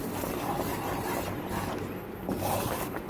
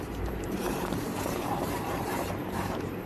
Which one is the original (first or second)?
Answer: first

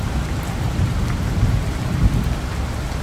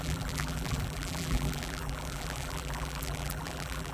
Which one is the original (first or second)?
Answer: first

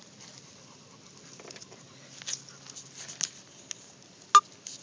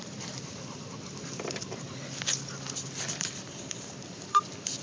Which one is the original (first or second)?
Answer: first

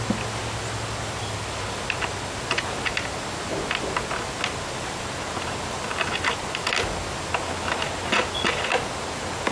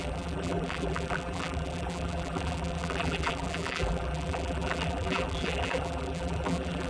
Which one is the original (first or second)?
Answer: first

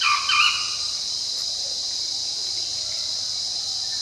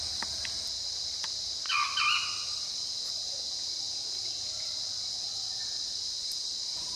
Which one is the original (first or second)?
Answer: second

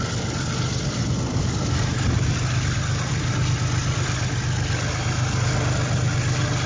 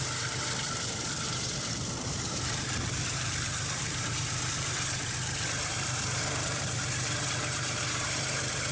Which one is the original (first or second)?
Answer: first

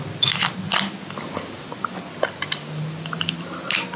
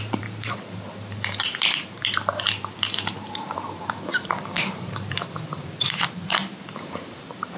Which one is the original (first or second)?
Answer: first